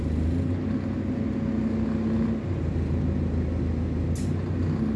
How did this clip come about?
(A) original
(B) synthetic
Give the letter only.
A